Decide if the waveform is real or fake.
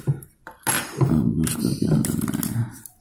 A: real